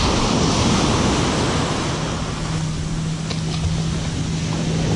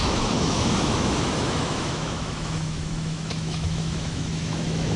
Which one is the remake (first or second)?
second